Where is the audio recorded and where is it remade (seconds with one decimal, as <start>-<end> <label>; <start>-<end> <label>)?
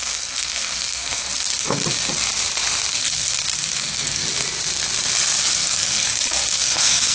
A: 0.0-1.8 remade; 1.8-2.9 recorded; 2.9-4.2 remade; 4.2-5.5 recorded; 5.5-7.1 remade